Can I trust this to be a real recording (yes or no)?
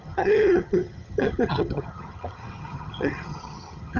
no